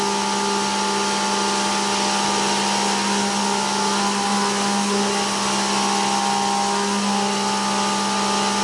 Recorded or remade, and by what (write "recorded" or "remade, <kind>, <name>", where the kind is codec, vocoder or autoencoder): recorded